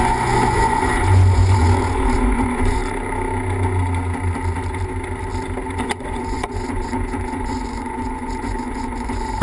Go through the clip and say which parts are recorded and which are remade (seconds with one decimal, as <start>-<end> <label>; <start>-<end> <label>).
0.0-2.8 remade; 2.8-5.8 recorded; 5.8-9.4 remade